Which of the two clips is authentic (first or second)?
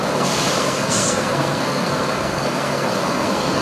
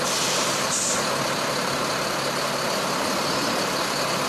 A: second